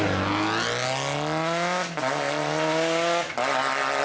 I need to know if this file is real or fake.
real